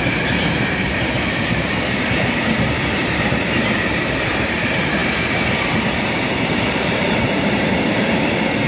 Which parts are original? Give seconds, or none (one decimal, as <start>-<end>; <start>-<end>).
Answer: none